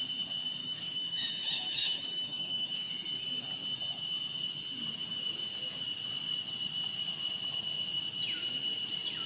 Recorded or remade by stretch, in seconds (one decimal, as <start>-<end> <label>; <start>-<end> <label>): 0.0-0.6 recorded; 0.6-2.9 remade; 2.9-9.3 recorded